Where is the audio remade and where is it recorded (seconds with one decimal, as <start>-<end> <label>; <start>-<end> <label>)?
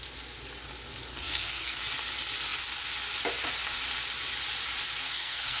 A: 0.0-1.1 recorded; 1.1-1.8 remade; 1.8-5.0 recorded; 5.0-5.6 remade